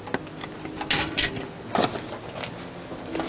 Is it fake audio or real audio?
real